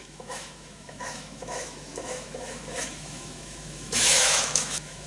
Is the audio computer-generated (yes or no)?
yes